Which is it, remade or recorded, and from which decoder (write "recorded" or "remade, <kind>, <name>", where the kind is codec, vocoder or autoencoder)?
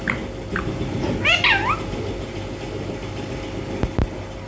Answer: recorded